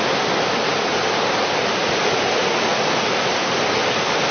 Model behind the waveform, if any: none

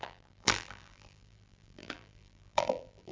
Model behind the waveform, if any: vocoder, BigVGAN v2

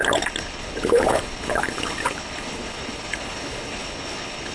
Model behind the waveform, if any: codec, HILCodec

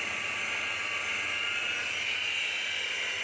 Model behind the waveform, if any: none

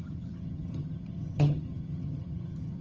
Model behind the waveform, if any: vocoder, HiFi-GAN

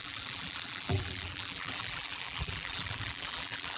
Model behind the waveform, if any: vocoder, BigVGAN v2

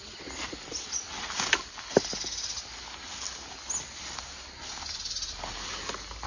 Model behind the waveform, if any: none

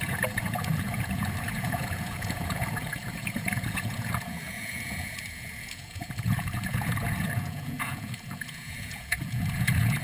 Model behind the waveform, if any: vocoder, Vocos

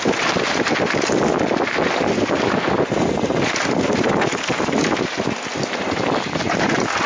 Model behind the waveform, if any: none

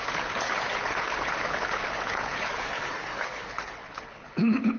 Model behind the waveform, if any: codec, HILCodec